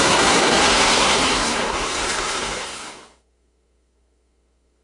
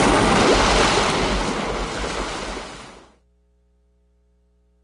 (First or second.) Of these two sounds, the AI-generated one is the first